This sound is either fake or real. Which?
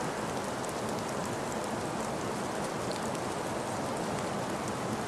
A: real